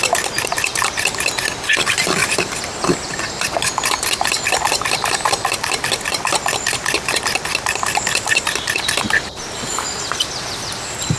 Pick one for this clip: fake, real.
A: fake